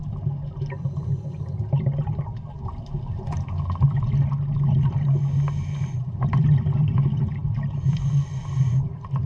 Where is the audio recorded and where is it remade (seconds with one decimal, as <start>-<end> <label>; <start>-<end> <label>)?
0.0-9.3 recorded